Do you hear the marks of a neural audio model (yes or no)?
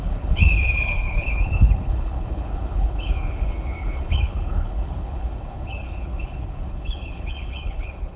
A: yes